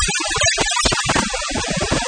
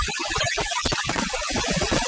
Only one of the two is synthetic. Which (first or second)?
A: second